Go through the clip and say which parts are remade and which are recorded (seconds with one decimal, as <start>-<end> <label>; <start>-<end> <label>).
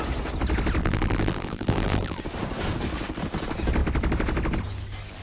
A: 0.0-0.8 recorded; 0.8-2.2 remade; 2.2-5.2 recorded